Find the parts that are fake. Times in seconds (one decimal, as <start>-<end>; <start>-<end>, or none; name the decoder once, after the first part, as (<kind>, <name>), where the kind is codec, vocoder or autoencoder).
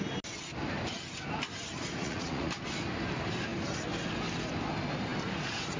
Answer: 2.0-2.5 (vocoder, Vocos)